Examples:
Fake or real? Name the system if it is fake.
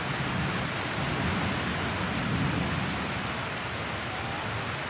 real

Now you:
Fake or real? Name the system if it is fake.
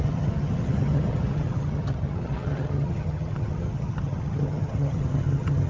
fake, vocoder, HiFi-GAN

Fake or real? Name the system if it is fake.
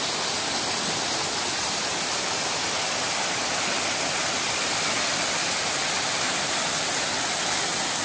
real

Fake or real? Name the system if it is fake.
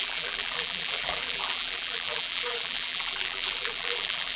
fake, vocoder, BigVGAN v2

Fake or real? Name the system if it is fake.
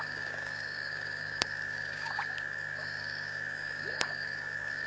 fake, codec, DAC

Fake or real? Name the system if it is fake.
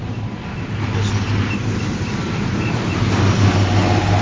real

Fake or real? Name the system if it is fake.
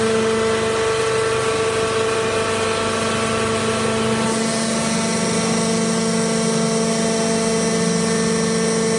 real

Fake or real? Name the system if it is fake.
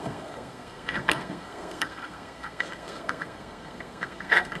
fake, codec, SNAC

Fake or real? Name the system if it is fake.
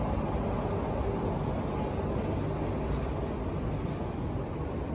real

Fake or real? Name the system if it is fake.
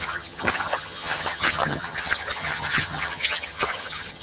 fake, vocoder, HiFi-GAN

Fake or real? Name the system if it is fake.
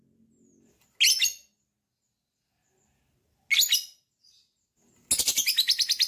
real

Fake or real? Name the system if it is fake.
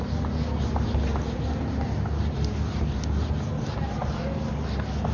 real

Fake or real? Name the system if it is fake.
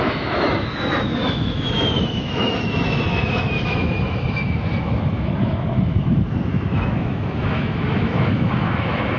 fake, autoencoder, DAC-VAE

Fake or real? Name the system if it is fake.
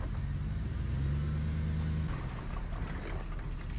real